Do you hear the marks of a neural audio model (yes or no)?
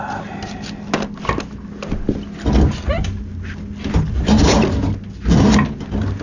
no